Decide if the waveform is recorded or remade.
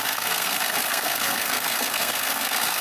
remade